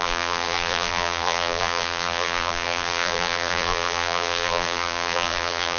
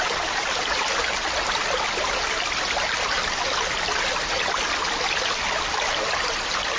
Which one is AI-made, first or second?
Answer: first